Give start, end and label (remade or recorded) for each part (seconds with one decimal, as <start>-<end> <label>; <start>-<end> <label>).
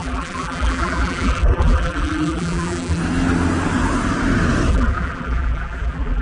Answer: 0.0-3.0 remade; 3.0-4.7 recorded; 4.7-6.2 remade